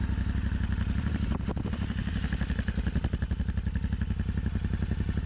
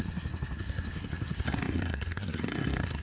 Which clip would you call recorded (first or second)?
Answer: first